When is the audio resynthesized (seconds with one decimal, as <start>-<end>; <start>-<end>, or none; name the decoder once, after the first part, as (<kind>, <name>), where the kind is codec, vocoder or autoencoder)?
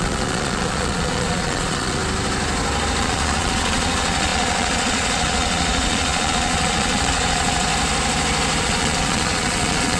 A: 0.0-2.0 (vocoder, Vocos); 3.0-7.7; 8.6-10.0